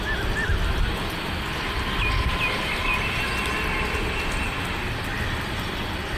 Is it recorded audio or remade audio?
recorded